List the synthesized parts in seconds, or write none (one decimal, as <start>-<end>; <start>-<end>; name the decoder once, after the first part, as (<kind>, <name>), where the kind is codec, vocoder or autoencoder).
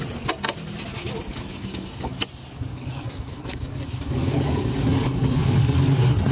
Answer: 1.3-2.1 (codec, DAC); 2.7-5.8